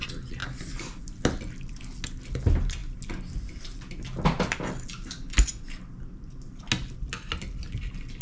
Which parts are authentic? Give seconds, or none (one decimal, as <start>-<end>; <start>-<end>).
0.0-8.2